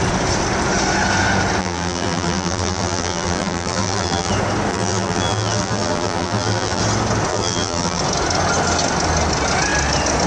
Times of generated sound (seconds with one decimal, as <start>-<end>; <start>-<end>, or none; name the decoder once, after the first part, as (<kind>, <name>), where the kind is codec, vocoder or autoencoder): 1.6-4.3 (vocoder, BigVGAN v2); 4.7-6.8; 7.3-8.0